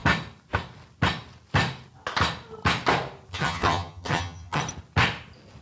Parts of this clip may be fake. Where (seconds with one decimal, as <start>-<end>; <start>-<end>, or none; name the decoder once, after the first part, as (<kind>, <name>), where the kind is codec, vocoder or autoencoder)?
3.3-4.6 (vocoder, HiFi-GAN)